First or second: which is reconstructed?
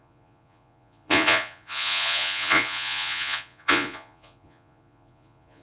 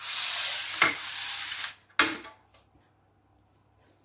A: first